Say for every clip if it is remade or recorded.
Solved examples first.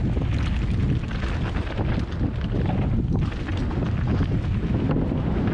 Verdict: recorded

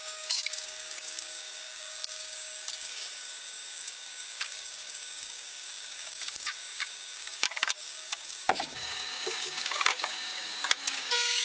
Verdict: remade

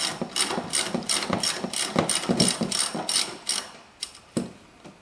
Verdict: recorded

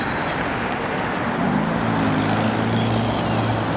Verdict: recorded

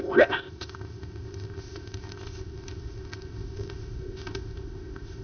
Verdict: remade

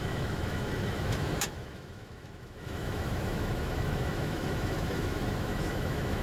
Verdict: remade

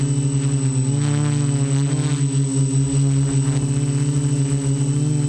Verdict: recorded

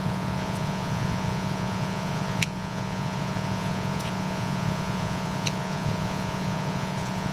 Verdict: remade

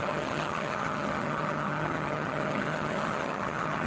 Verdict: remade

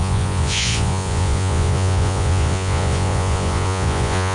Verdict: remade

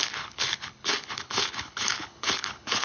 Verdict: remade